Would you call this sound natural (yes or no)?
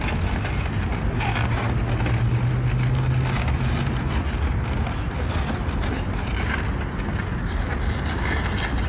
yes